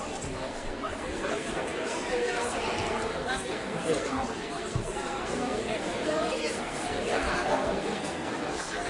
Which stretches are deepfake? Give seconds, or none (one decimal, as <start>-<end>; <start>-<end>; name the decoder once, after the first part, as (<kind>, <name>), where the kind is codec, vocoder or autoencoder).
0.0-8.9 (codec, SNAC)